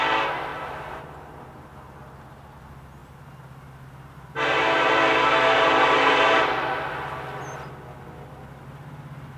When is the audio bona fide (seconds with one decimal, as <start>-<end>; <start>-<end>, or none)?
0.0-0.5; 2.6-9.4